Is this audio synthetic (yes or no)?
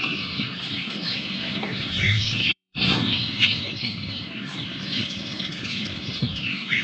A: yes